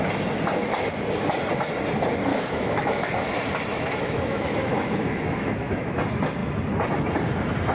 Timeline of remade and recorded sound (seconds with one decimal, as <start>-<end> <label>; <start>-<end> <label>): 0.0-2.3 recorded; 2.3-3.1 remade; 3.1-3.7 recorded; 3.7-6.0 remade; 6.0-7.7 recorded